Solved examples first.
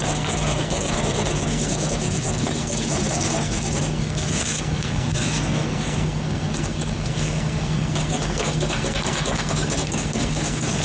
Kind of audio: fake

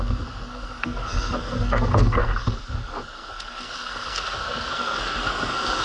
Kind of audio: fake